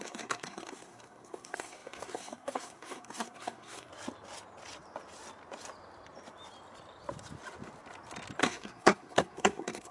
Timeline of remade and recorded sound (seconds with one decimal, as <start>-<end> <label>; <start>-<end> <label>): 0.0-3.9 remade; 3.9-8.4 recorded; 8.4-9.9 remade